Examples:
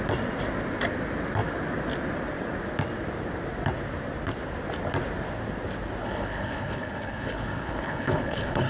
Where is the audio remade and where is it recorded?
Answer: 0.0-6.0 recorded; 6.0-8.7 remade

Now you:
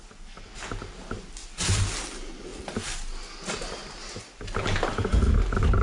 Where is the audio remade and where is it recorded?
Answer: 0.0-5.8 recorded

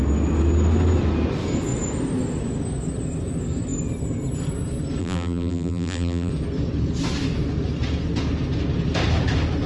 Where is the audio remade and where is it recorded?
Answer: 0.0-5.0 recorded; 5.0-6.3 remade; 6.3-9.7 recorded

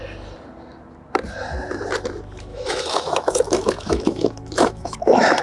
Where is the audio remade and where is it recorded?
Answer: 0.0-2.5 recorded; 2.5-5.4 remade

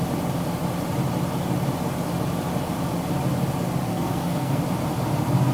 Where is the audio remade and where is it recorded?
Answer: 0.0-3.9 recorded; 3.9-4.6 remade; 4.6-5.5 recorded

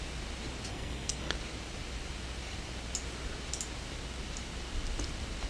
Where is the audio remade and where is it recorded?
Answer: 0.0-0.7 recorded; 0.7-1.3 remade; 1.3-5.5 recorded

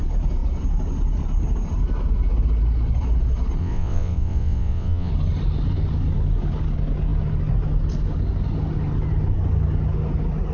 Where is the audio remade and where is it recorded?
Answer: 0.0-3.6 recorded; 3.6-5.1 remade; 5.1-10.5 recorded